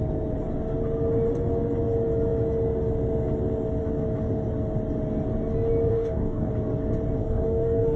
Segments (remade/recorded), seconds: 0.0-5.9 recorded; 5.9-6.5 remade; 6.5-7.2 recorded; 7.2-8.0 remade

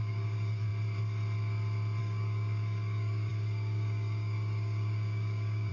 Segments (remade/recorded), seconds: 0.0-0.7 remade; 0.7-2.0 recorded; 2.0-5.7 remade

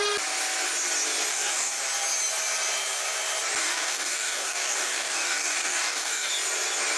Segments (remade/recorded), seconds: 0.0-1.3 recorded; 1.3-1.8 remade; 1.8-3.6 recorded; 3.6-6.3 remade; 6.3-7.0 recorded

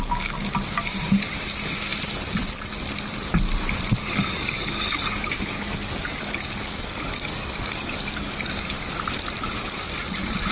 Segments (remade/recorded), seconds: 0.0-4.0 recorded; 4.0-8.9 remade; 8.9-10.5 recorded

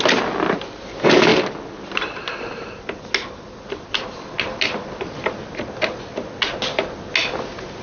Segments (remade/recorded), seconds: 0.0-7.8 recorded